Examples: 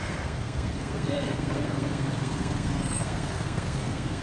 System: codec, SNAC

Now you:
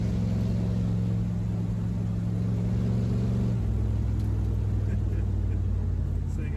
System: none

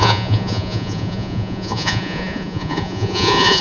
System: vocoder, Vocos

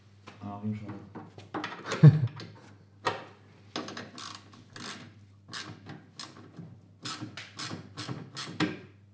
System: none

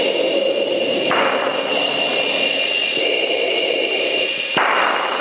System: none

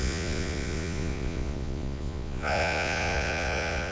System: vocoder, Vocos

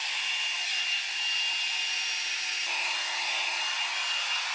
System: none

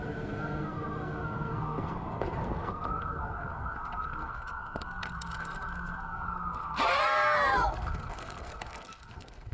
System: codec, SNAC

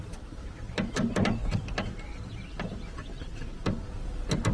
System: none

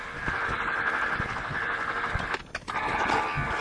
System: none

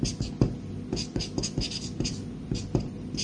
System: none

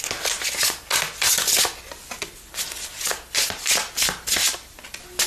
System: none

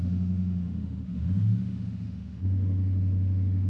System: autoencoder, DAC-VAE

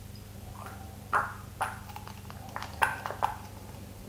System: none